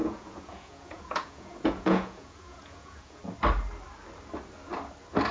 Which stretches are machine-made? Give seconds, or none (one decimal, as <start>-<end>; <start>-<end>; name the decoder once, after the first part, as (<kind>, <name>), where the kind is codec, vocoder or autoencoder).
0.0-3.2 (vocoder, Vocos)